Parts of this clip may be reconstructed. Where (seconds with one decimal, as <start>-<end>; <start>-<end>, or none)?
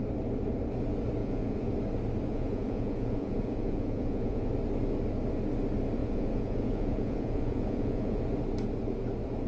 1.2-1.7; 2.3-4.5; 6.0-8.2